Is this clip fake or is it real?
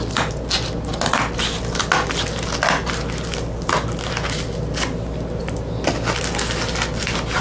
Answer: real